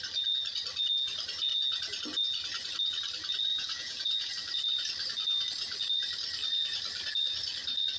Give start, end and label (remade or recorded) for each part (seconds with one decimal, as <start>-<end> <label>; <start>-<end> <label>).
0.0-3.5 recorded; 3.5-4.3 remade; 4.3-8.0 recorded